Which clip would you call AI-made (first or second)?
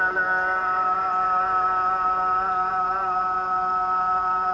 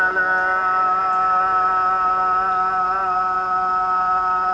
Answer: first